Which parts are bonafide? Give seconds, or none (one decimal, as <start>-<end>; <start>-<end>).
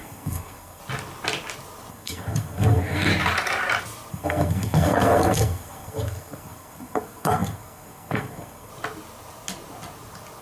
0.8-1.9; 3.1-4.1; 8.7-10.4